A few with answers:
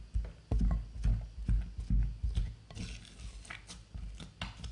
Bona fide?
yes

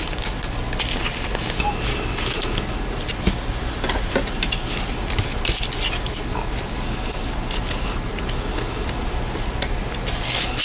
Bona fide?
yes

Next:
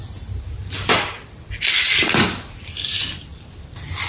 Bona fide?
yes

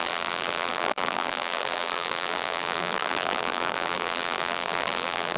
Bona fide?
no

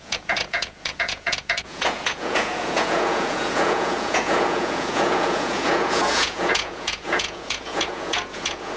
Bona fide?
no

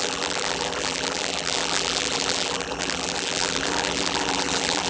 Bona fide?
no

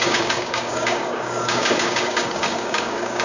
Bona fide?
no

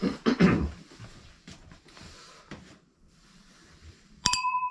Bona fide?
no